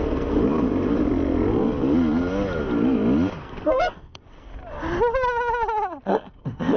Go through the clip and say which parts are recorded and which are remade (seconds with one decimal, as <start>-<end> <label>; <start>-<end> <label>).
0.0-0.4 remade; 0.4-3.4 recorded; 3.4-4.5 remade; 4.5-6.1 recorded; 6.1-6.8 remade